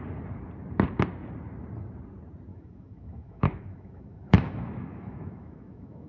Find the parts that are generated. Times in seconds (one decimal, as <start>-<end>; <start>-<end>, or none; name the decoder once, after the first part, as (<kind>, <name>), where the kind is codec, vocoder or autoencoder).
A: 2.5-6.1 (autoencoder, DAC-VAE)